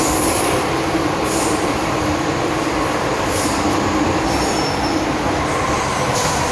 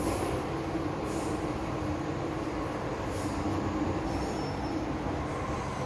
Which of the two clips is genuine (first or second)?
second